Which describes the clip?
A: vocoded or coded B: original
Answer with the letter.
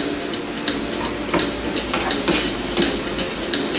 B